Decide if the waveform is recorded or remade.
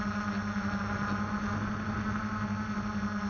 recorded